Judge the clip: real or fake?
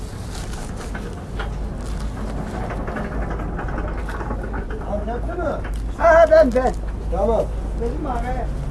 real